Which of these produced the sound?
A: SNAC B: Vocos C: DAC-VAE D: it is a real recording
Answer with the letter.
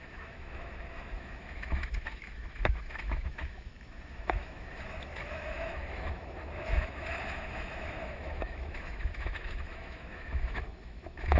C